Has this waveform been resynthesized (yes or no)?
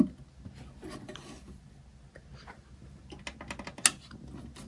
no